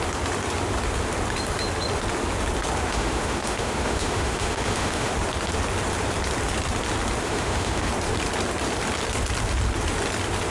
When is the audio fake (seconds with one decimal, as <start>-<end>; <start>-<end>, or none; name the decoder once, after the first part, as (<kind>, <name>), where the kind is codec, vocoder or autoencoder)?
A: 2.9-5.1 (autoencoder, DAC-VAE); 7.2-7.9